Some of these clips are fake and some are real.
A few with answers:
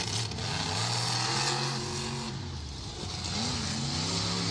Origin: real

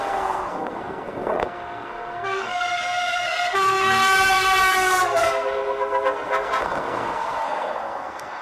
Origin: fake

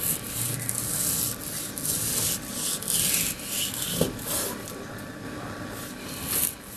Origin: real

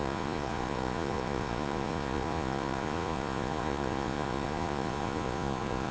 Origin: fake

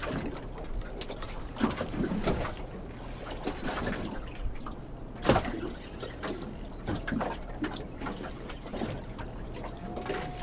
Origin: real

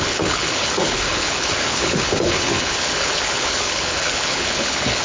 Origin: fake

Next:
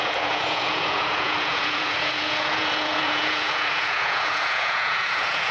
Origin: fake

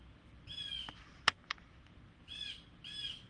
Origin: real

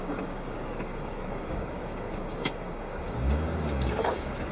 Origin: fake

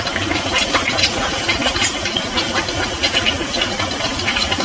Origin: real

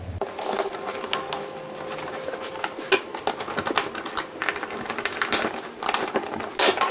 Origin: real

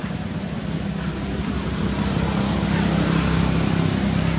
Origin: real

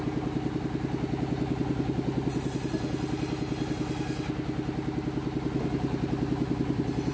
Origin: real